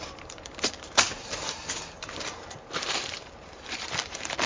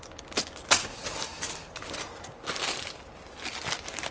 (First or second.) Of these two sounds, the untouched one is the second